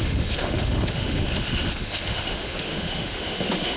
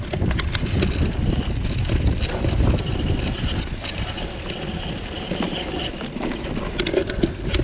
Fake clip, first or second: first